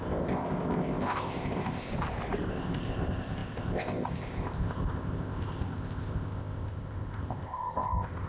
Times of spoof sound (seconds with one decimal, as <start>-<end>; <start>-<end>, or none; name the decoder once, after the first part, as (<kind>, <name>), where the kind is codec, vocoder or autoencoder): 0.0-1.9 (codec, ZipCodec); 2.5-8.3